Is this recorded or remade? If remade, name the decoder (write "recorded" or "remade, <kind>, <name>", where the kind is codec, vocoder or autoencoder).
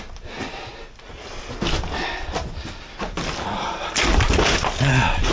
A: recorded